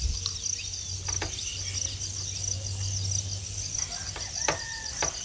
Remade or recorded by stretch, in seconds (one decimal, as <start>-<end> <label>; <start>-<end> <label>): 0.0-5.2 recorded